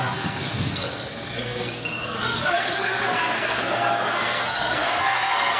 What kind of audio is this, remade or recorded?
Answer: remade